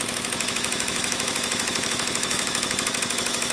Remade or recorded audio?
remade